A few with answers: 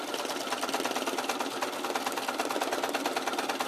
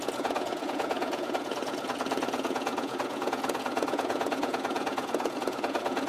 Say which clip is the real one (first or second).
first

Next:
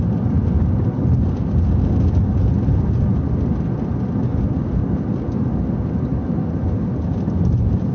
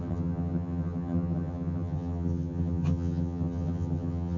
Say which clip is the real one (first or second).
first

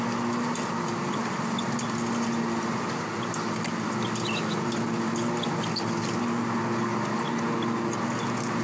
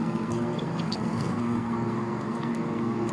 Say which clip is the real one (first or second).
first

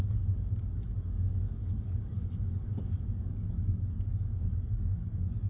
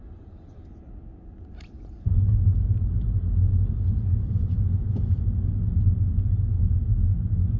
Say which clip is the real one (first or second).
second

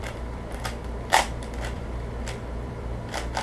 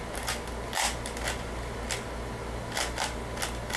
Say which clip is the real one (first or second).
second